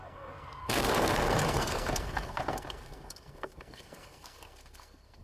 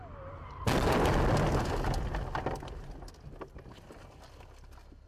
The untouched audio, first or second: second